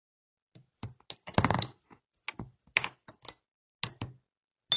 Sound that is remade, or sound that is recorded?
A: recorded